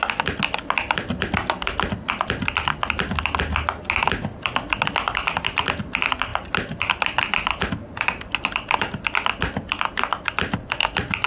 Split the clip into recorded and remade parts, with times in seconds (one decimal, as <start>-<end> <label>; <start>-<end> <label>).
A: 0.0-11.3 recorded